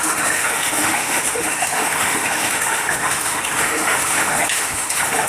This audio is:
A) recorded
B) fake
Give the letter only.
B